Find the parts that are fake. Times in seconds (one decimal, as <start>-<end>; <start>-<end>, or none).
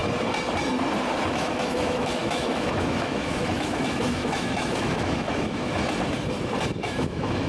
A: 1.3-5.8; 6.8-7.5